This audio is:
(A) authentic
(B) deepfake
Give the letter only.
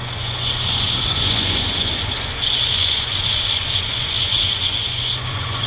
B